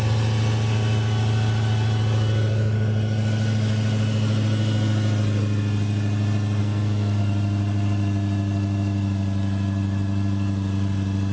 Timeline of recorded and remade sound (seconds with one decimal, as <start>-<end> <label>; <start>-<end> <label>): 0.0-6.6 recorded; 6.6-7.2 remade; 7.2-11.3 recorded